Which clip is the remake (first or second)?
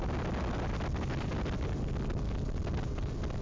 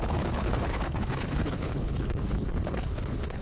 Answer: second